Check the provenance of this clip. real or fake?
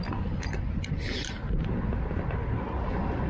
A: real